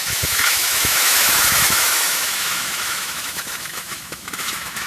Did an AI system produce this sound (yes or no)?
yes